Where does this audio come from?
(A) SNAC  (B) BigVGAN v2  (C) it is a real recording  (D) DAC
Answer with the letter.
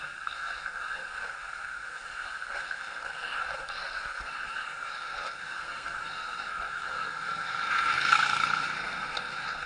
A